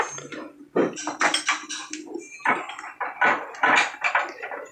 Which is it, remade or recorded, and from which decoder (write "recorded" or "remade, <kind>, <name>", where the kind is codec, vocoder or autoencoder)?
recorded